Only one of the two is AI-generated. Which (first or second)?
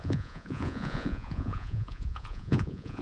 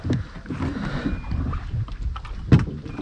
first